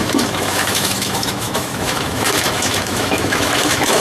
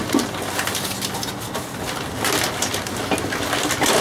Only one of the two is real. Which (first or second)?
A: second